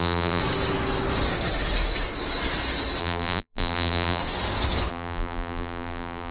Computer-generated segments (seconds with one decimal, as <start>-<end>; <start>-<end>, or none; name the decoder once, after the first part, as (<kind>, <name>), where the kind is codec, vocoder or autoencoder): 0.0-0.4 (vocoder, BigVGAN v2); 3.0-4.2; 4.9-6.3